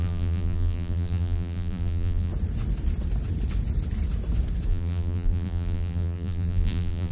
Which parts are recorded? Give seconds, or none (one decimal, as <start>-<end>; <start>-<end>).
2.3-4.7